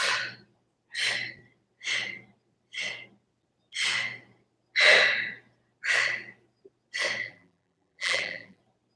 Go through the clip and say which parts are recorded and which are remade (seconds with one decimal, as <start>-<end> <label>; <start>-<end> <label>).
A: 0.0-7.2 recorded; 7.2-8.6 remade; 8.6-9.0 recorded